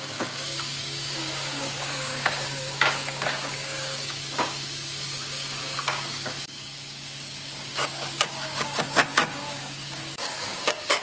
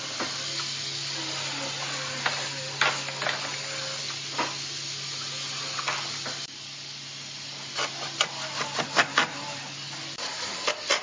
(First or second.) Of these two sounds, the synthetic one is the first